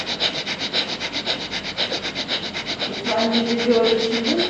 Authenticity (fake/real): real